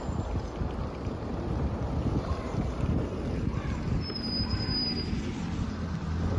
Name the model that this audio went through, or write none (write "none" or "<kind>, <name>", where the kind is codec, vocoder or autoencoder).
none